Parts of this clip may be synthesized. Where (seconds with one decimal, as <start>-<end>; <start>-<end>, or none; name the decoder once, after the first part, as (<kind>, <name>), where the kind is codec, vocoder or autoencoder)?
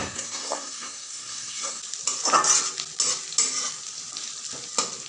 0.0-1.8 (codec, SNAC)